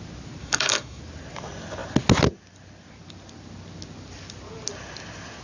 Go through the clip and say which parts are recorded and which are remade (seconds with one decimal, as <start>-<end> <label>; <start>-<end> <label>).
0.0-0.4 recorded; 0.4-1.0 remade; 1.0-5.4 recorded